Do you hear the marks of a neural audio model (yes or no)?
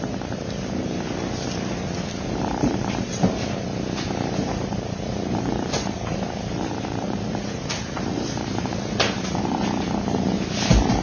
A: yes